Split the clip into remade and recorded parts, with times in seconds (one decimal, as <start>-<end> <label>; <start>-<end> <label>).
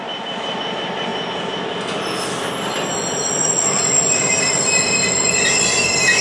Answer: 0.0-6.2 recorded